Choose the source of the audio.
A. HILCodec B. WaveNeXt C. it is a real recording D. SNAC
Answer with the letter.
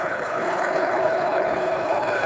A